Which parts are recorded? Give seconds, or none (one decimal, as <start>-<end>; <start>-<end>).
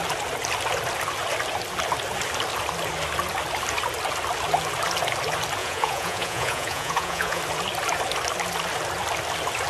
0.0-5.6; 7.4-9.7